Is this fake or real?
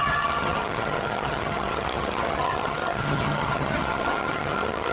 fake